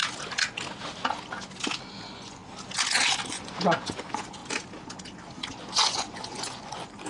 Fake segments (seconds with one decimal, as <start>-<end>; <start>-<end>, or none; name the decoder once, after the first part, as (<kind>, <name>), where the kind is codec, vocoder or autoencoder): 1.9-2.4 (vocoder, Vocos); 3.3-4.4; 5.5-7.1